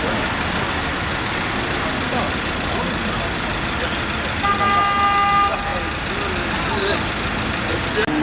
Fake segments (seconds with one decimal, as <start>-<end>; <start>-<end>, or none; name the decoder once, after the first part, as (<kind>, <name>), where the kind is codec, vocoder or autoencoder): none

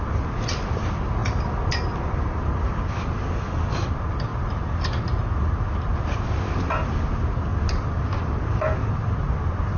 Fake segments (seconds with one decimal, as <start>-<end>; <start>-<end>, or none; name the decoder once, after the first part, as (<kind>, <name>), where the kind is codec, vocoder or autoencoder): none

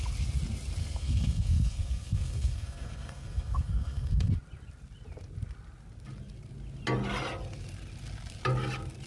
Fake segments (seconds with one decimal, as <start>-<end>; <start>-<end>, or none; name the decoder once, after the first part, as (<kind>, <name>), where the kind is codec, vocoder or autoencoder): 0.8-4.3 (codec, SNAC)

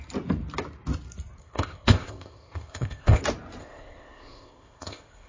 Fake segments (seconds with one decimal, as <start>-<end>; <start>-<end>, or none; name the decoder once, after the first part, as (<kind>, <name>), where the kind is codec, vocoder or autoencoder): 1.4-3.2 (codec, ZipCodec); 3.6-5.3

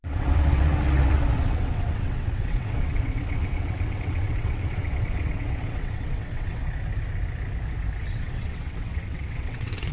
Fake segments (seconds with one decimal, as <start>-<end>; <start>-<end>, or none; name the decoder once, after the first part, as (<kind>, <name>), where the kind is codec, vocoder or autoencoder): 0.0-6.6 (vocoder, WaveNeXt); 8.1-9.9

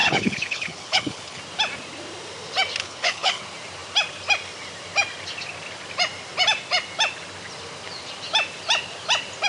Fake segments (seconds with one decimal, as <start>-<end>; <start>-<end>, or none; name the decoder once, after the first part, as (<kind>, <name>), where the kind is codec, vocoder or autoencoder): 0.0-1.4 (codec, HILCodec); 2.8-3.4

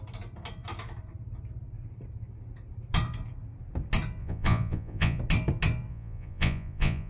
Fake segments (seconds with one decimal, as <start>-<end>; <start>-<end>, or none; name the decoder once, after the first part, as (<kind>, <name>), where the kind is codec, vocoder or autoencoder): 4.2-5.2 (vocoder, Vocos); 5.9-7.1

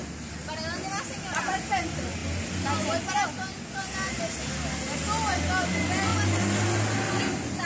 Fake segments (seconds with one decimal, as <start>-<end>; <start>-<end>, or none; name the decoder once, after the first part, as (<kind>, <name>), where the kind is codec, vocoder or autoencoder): none